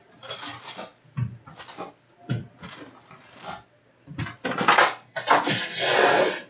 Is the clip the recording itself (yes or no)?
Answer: yes